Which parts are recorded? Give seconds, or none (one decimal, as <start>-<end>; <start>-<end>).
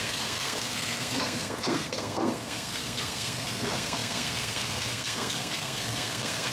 none